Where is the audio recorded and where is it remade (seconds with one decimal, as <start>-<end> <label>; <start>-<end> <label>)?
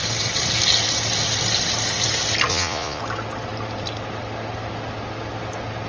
0.0-2.5 recorded; 2.5-3.0 remade; 3.0-5.9 recorded